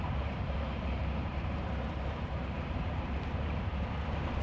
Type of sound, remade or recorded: remade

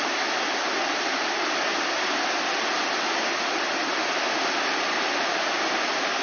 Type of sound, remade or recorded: recorded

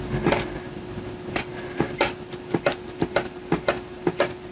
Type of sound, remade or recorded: recorded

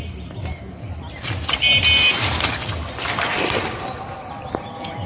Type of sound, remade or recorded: recorded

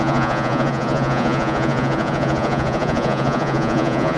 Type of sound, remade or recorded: remade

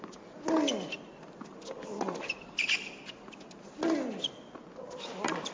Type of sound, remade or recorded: recorded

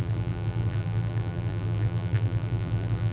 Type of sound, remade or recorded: remade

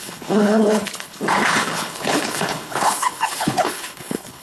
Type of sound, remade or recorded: remade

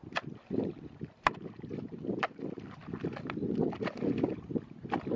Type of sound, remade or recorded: recorded